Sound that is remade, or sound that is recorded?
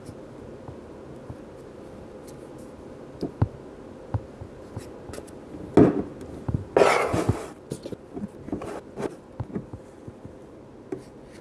recorded